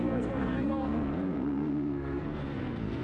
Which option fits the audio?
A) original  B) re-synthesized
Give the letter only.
B